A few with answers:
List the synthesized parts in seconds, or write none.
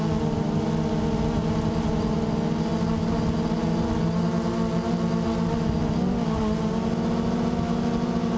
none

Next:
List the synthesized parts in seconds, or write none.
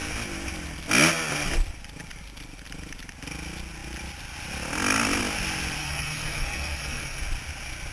5.8-7.2 (codec, SNAC)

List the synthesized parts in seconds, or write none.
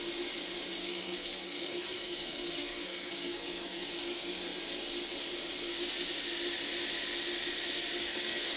0.8-3.9 (codec, SNAC); 8.0-8.6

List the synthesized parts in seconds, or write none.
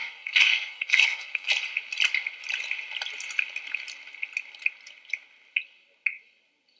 0.0-1.5 (codec, SNAC)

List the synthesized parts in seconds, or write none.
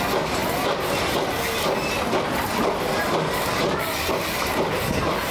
none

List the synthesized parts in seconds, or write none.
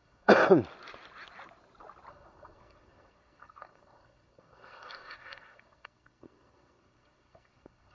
0.0-0.4 (codec, SNAC); 2.1-7.9